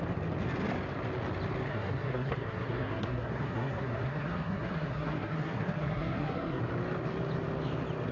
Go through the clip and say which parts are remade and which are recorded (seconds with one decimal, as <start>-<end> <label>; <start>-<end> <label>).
0.0-1.7 recorded; 1.7-6.6 remade; 6.6-8.1 recorded